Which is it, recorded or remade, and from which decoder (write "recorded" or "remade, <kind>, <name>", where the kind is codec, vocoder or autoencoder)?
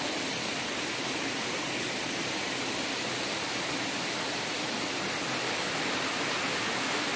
recorded